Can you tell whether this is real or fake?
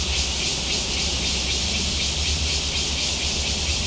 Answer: real